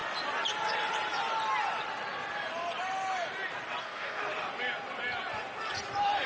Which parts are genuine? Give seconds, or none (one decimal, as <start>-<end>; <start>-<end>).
0.0-3.8; 4.2-6.3